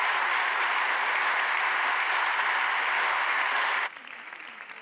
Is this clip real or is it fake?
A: fake